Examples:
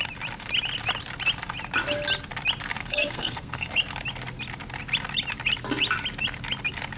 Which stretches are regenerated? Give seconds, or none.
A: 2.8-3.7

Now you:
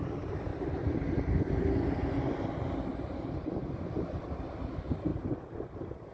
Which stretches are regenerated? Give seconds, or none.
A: none

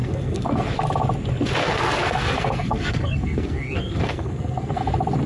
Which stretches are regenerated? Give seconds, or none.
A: 0.0-0.7; 1.6-4.8

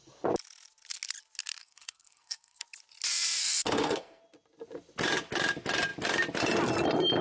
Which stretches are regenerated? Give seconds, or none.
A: 1.6-2.6; 3.4-4.2

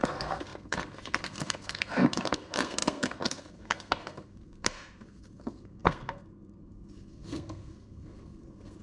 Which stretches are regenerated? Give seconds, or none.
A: 0.0-8.8